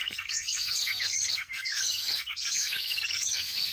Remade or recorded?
remade